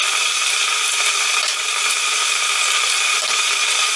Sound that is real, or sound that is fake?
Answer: fake